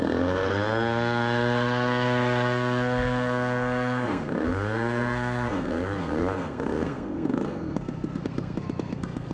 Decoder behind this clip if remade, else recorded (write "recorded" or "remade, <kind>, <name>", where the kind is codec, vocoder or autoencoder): remade, codec, SNAC